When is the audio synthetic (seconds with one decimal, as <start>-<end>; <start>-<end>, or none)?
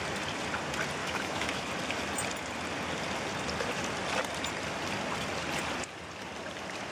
1.0-1.7